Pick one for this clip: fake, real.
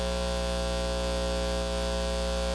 real